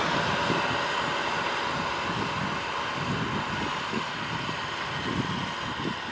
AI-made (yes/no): no